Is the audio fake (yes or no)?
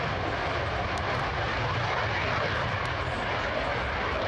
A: no